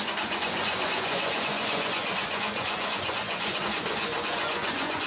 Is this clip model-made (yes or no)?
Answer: yes